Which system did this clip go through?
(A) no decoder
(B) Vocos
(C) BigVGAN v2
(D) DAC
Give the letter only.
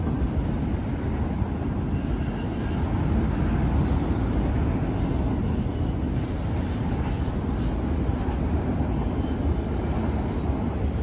A